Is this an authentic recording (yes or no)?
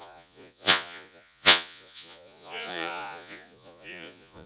no